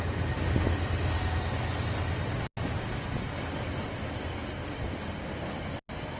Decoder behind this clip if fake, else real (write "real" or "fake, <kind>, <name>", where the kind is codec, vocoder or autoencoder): real